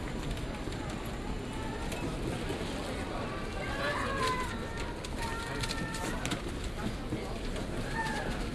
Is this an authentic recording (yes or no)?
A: yes